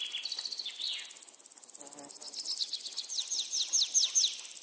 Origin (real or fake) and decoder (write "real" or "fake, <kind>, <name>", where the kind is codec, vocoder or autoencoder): real